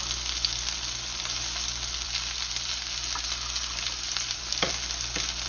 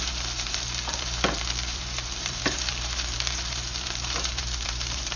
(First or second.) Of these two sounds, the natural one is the first